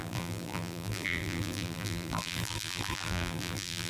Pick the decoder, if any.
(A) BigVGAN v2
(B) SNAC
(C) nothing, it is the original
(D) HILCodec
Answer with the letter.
A